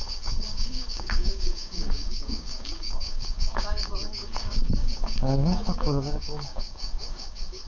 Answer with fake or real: fake